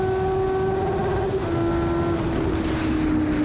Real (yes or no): yes